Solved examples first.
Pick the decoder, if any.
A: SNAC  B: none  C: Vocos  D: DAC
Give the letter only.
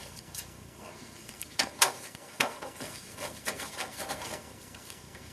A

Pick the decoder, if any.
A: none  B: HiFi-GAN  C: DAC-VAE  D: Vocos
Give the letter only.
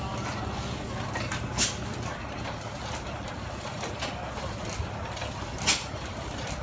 A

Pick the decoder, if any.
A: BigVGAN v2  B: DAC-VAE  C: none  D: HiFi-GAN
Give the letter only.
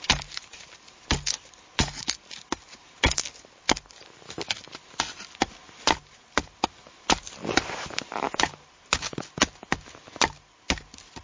C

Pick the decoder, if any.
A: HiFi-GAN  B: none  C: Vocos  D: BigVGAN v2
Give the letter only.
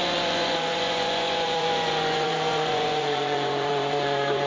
C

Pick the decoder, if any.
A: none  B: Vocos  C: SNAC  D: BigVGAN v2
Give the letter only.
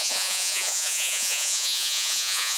B